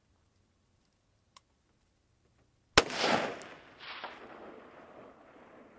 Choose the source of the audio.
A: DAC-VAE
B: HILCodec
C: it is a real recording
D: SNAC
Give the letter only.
C